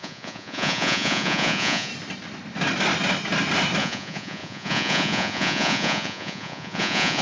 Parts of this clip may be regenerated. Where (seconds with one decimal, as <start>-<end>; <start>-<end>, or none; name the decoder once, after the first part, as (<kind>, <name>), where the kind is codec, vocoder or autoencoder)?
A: 0.0-1.9 (vocoder, Vocos); 3.8-7.2